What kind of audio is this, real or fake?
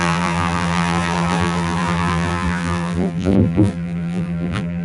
fake